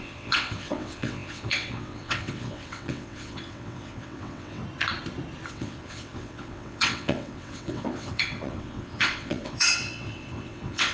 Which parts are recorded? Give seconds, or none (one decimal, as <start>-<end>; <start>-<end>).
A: 4.6-5.5